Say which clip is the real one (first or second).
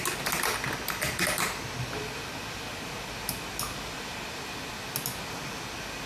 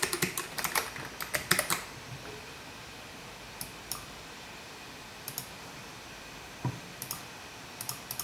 first